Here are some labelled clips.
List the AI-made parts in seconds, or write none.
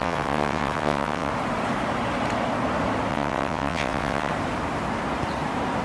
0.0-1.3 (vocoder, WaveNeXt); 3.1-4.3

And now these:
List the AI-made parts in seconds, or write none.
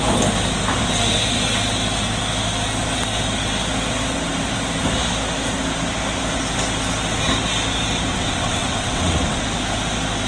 8.1-9.4 (vocoder, WaveNeXt)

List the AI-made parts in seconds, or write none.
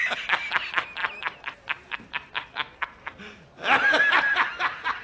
none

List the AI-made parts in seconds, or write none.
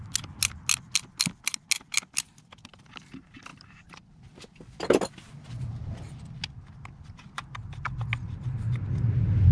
none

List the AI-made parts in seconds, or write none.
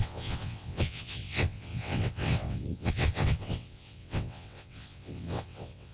0.0-5.9 (vocoder, WaveNeXt)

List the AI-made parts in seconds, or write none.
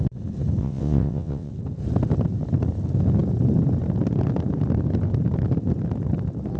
0.6-1.5 (vocoder, WaveNeXt)